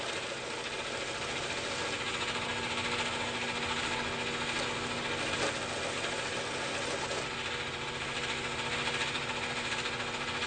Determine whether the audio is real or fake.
real